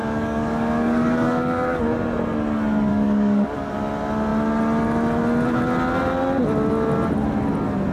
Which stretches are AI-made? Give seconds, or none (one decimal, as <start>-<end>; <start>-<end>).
0.0-1.8; 2.9-3.7